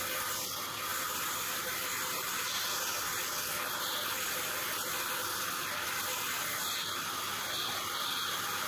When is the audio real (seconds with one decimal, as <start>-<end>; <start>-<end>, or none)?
0.0-0.9; 1.7-2.9; 4.0-8.7